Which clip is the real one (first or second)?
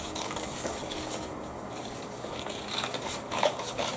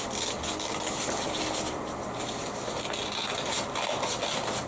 second